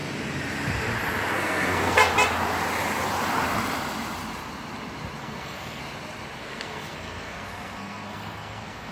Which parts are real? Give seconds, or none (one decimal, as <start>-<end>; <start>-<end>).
0.0-1.3; 2.1-5.2; 5.8-6.4